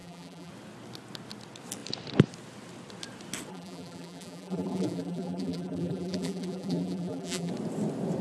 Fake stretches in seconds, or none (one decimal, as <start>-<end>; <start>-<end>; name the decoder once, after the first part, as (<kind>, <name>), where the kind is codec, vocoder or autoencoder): 0.0-0.5 (vocoder, BigVGAN v2); 3.5-7.5